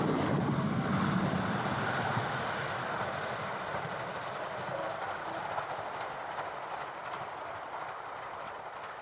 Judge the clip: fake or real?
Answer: real